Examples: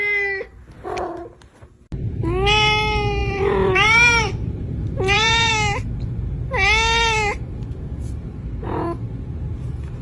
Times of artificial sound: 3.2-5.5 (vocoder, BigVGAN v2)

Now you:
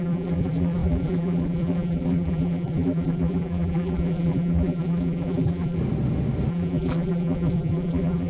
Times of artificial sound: 0.0-5.8 (vocoder, BigVGAN v2); 6.5-8.3

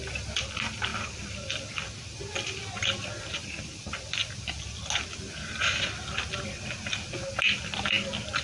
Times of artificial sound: 0.9-2.1 (vocoder, BigVGAN v2); 2.8-3.3